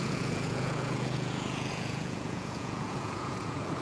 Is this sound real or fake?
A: fake